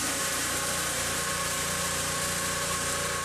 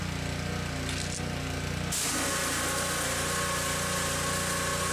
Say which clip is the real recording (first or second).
second